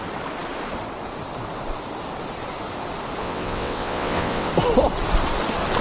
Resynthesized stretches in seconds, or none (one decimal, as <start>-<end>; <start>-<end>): 3.2-4.5